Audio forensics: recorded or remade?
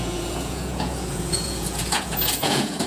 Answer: remade